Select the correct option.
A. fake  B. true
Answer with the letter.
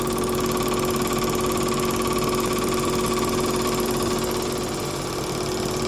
B